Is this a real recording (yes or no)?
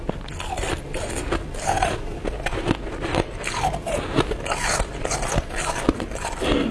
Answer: yes